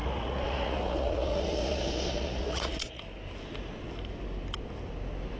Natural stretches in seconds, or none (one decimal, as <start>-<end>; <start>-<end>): 3.0-5.4